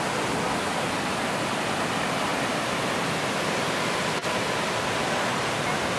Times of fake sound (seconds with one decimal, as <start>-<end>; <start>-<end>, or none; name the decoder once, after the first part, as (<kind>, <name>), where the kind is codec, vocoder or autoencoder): none